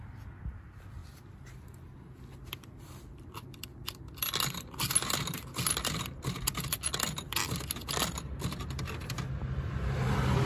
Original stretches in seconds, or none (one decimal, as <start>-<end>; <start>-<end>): 0.0-10.5